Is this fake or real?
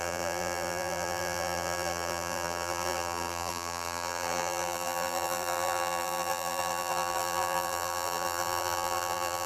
fake